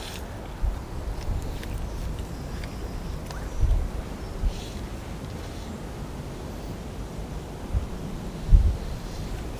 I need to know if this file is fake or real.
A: real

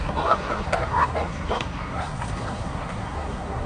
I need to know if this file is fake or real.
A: fake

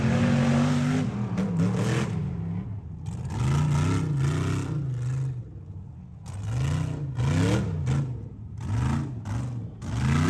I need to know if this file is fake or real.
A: real